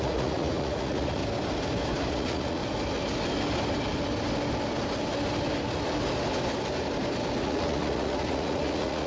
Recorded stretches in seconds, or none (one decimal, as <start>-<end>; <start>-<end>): 1.2-2.1; 2.6-7.4